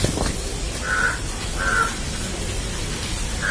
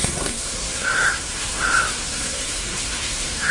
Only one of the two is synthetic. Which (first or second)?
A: second